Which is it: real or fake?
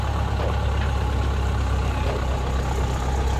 real